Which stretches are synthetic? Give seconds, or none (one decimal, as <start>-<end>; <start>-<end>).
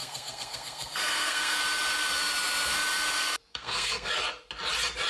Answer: 0.0-1.6; 3.5-4.1